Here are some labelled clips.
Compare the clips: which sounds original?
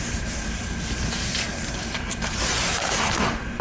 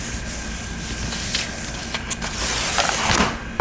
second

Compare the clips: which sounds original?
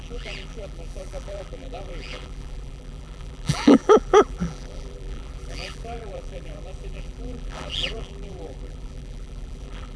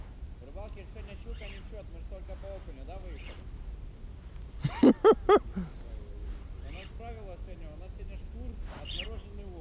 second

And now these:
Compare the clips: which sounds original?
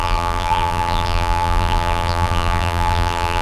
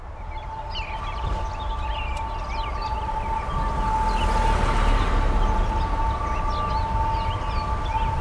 second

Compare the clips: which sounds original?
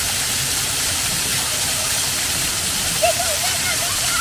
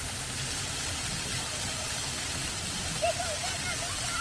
second